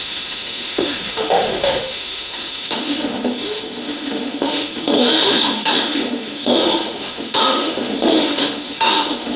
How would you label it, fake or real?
fake